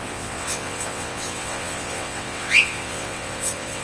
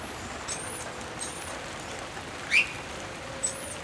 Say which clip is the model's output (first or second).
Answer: first